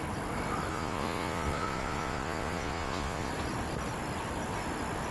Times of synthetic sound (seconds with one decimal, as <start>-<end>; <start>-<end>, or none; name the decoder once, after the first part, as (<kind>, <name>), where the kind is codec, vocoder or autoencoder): 0.7-3.3 (vocoder, Vocos)